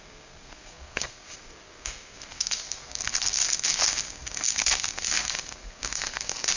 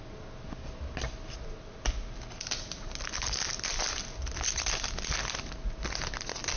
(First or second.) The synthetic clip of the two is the first